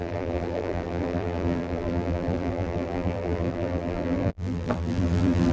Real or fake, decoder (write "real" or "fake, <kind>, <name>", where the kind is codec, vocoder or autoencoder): fake, vocoder, BigVGAN v2